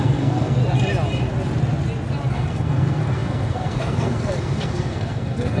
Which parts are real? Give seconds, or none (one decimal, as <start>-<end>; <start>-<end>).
0.6-2.3

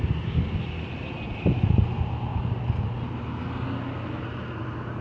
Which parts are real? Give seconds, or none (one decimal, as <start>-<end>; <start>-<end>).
0.0-5.0